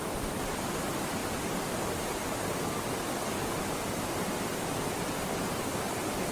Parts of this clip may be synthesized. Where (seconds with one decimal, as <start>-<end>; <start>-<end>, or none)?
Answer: none